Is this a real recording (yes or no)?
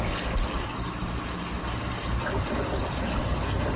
yes